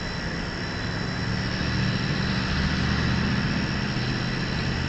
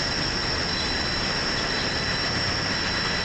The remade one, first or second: second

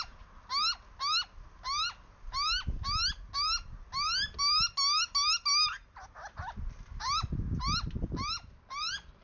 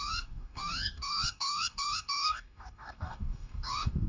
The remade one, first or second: second